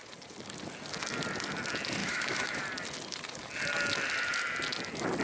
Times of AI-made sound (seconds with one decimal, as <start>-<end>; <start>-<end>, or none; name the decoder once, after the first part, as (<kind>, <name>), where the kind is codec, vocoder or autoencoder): 2.0-2.6 (autoencoder, DAC-VAE)